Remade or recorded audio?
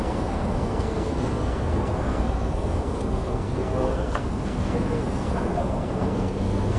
remade